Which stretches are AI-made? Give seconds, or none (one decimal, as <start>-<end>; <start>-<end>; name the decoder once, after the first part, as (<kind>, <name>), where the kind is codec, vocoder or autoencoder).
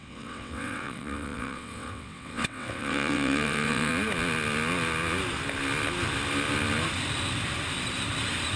0.0-3.9 (vocoder, WaveNeXt)